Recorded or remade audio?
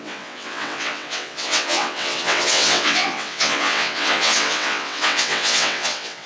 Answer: remade